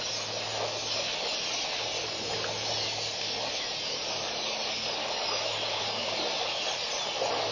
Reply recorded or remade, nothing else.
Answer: recorded